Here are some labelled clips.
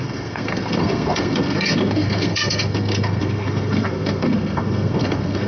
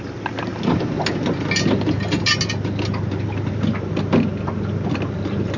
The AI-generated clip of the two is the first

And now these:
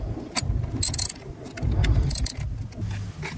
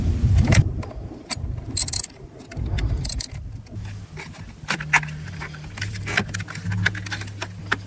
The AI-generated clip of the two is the second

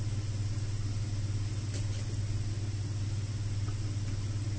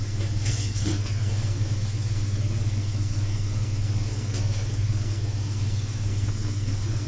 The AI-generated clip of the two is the second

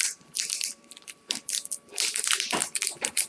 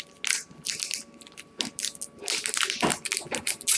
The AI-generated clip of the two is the first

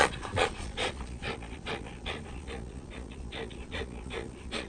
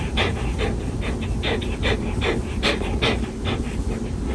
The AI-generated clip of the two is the first